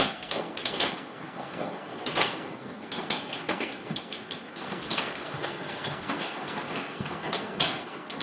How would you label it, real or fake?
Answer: fake